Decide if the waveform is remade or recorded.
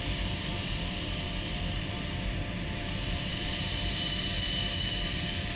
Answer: remade